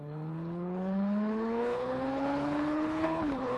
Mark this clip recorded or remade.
remade